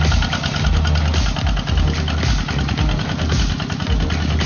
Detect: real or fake real